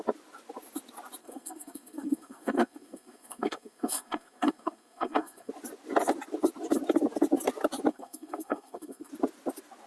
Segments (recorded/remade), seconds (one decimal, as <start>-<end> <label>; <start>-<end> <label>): 0.0-1.2 recorded; 1.2-5.5 remade; 5.5-7.9 recorded; 7.9-9.1 remade; 9.1-9.9 recorded